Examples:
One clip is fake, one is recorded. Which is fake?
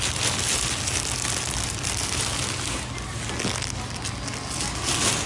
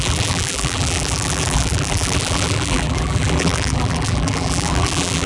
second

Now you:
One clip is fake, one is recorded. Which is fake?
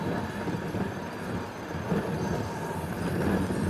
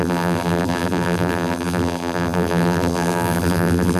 second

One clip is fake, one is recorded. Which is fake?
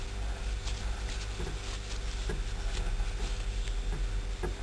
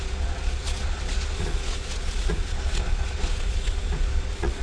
second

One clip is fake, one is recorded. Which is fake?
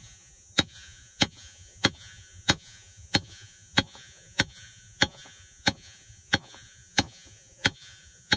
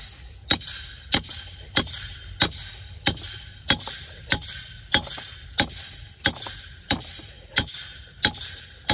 first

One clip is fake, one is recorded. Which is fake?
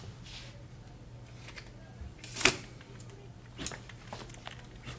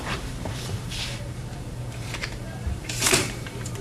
second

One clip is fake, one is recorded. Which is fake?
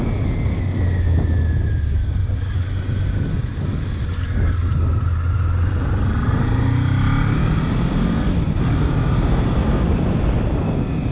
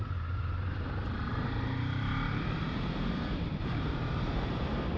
second